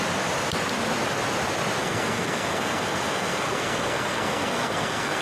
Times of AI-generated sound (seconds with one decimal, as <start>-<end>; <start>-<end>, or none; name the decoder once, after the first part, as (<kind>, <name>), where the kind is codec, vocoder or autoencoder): 1.8-5.2 (codec, SNAC)

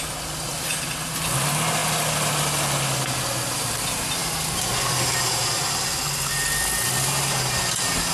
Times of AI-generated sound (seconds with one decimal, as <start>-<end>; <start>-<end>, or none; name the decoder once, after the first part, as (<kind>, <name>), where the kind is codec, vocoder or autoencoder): none